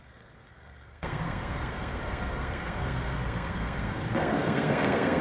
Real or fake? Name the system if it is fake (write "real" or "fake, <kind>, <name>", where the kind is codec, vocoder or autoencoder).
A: fake, codec, SNAC